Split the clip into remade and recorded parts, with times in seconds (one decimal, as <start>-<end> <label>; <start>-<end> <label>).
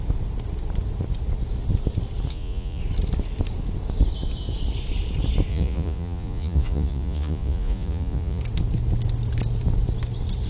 0.0-2.3 recorded; 2.3-2.8 remade; 2.8-5.5 recorded; 5.5-8.4 remade; 8.4-10.5 recorded